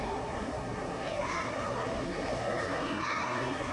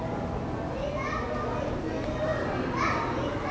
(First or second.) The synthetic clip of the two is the first